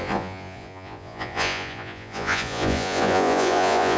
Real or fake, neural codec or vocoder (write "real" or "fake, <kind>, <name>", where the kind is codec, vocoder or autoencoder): fake, vocoder, Vocos